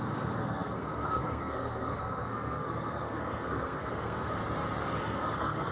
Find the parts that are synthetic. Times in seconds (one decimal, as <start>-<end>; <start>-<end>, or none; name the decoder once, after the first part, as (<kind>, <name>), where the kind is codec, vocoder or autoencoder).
0.0-4.4 (codec, SNAC); 5.0-5.7